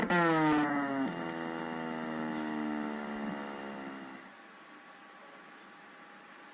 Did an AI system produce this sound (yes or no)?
no